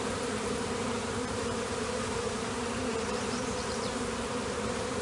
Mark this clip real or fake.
fake